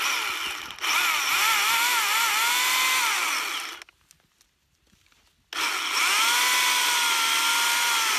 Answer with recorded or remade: recorded